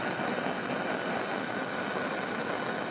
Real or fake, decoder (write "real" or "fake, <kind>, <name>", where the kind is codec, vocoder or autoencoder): real